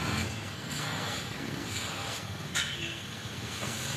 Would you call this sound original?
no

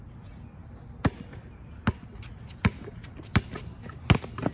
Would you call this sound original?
yes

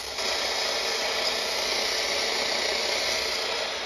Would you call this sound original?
yes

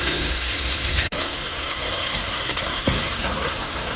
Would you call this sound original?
no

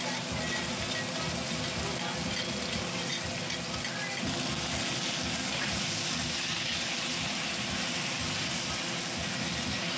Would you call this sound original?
yes